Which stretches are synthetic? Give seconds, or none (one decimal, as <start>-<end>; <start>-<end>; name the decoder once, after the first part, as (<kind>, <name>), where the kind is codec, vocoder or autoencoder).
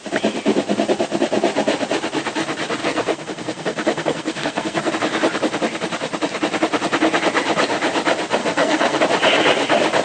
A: 2.8-4.9 (codec, SNAC); 8.4-9.0